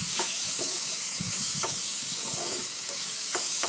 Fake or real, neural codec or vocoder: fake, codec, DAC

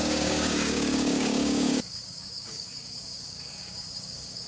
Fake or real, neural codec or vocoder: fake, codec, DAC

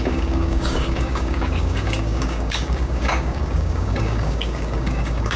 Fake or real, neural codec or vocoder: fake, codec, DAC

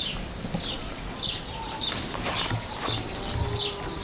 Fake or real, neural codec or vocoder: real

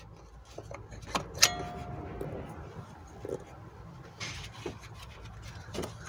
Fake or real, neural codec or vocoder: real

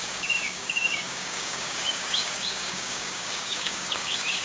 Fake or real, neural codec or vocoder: fake, codec, DAC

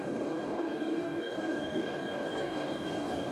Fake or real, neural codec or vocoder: fake, codec, DAC